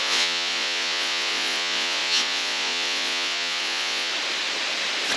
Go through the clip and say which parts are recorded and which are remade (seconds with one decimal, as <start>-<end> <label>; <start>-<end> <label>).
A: 0.0-4.1 remade; 4.1-5.2 recorded